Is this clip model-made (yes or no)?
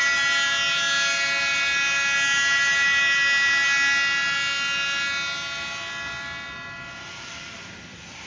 no